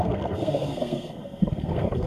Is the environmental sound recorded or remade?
remade